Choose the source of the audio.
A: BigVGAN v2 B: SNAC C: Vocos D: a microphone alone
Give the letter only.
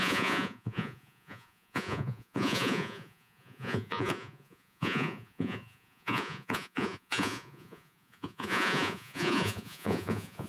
C